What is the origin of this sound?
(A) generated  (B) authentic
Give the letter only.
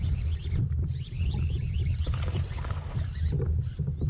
B